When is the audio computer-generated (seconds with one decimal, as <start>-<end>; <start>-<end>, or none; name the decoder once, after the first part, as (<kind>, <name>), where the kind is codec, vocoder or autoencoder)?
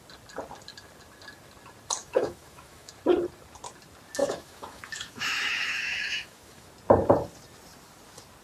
2.0-2.9 (autoencoder, DAC-VAE); 4.2-6.7